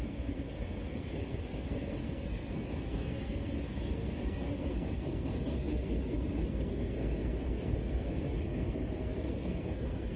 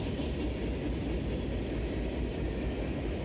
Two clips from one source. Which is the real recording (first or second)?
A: second